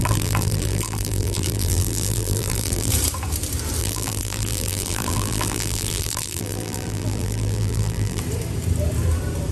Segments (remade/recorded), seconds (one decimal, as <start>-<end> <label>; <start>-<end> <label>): 0.0-2.9 remade; 2.9-3.8 recorded; 3.8-8.2 remade; 8.2-9.5 recorded